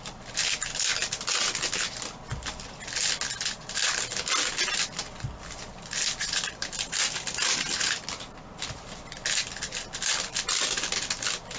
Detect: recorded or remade recorded